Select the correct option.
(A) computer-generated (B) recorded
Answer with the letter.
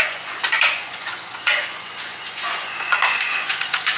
A